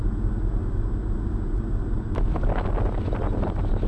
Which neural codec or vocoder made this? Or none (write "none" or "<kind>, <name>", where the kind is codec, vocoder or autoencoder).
none